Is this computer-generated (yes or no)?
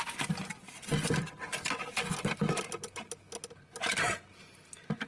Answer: no